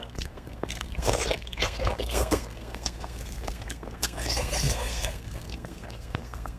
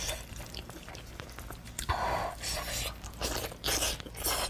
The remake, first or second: first